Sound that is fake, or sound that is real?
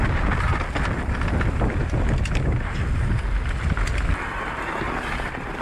real